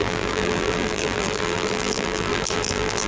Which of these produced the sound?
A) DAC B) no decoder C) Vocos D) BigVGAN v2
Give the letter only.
D